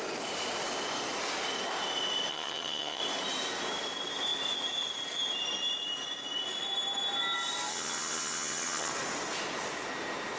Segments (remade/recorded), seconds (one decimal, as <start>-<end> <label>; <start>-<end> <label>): 0.0-2.3 recorded; 2.3-3.0 remade; 3.0-7.7 recorded; 7.7-8.9 remade; 8.9-10.4 recorded